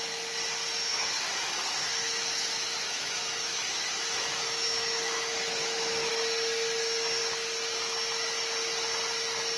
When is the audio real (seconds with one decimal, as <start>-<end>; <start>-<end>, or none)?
0.0-0.9; 6.1-9.6